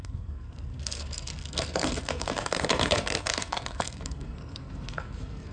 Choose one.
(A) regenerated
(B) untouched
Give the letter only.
A